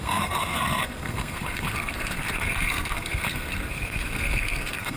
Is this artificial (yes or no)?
yes